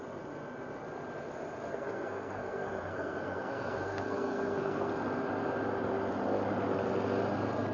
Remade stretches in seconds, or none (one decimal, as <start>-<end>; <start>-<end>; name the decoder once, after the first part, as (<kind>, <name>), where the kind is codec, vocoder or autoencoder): 1.7-4.9 (codec, SNAC)